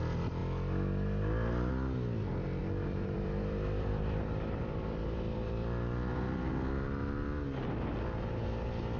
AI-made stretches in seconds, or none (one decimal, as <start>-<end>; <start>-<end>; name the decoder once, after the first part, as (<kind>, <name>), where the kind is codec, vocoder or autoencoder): 2.6-6.5 (vocoder, BigVGAN v2)